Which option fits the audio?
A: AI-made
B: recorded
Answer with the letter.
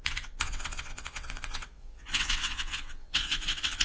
A